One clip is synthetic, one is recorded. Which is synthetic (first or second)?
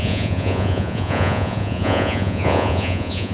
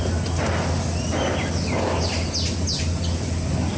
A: first